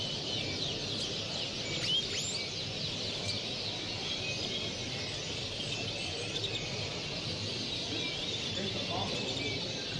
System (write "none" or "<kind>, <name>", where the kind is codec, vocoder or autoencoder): none